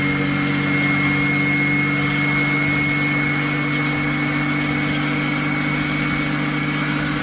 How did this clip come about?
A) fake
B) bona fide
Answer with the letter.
B